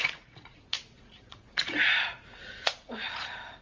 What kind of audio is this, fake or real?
fake